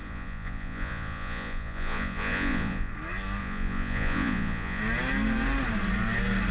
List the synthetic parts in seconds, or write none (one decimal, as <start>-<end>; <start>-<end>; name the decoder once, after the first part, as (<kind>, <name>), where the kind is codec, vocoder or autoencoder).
0.0-2.9 (vocoder, Vocos); 3.4-4.8